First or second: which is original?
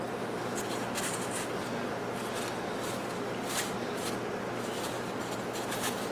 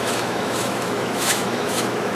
first